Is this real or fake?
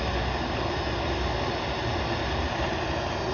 real